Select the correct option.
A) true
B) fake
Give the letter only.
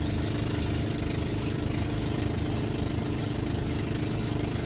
A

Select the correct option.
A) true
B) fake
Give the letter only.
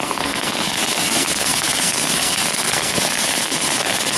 B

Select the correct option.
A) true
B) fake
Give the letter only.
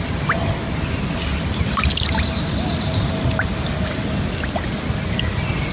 A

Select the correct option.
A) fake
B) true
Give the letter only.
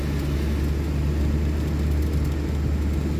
B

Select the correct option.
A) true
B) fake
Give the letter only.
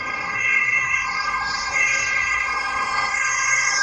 B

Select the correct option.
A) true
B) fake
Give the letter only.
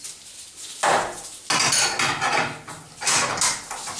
A